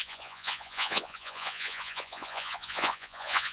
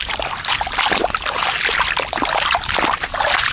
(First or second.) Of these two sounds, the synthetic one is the first